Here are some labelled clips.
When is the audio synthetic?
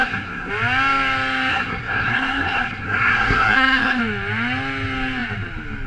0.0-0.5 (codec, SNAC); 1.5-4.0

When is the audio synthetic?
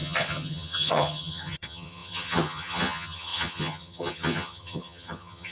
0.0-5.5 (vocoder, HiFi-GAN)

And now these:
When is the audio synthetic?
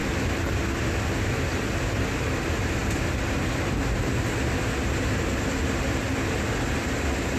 none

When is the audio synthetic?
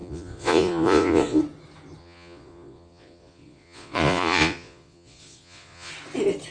0.0-1.4 (vocoder, Vocos); 2.0-5.9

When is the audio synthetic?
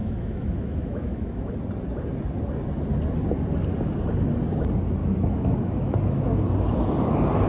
0.0-1.5 (autoencoder, DAC-VAE); 5.0-6.4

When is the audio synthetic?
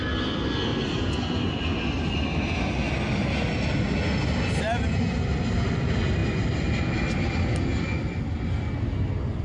0.7-2.1 (vocoder, BigVGAN v2); 6.2-6.8; 7.7-8.2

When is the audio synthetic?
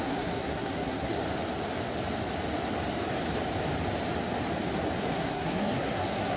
0.0-1.2 (codec, SNAC); 5.0-6.4